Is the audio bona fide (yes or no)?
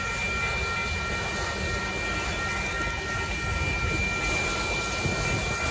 yes